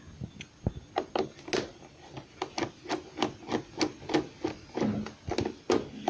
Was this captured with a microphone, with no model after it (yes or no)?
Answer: yes